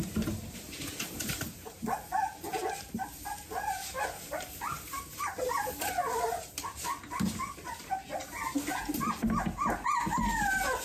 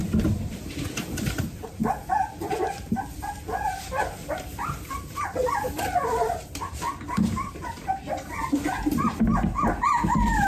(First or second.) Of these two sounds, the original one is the first